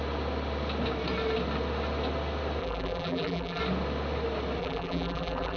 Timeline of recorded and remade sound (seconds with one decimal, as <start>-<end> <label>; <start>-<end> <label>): 0.0-2.6 recorded; 2.6-3.6 remade; 3.6-4.6 recorded; 4.6-5.6 remade